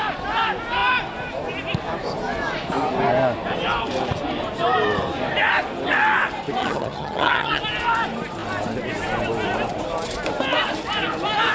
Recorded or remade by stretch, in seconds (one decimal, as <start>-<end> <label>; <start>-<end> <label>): 0.0-6.6 recorded; 6.6-7.6 remade; 7.6-11.5 recorded